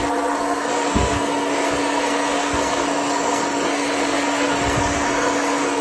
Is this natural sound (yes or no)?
no